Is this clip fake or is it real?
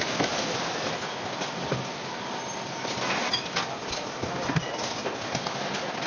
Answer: real